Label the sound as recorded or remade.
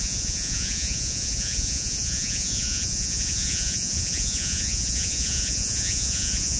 remade